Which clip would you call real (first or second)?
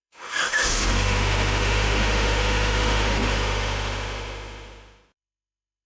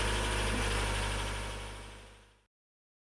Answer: second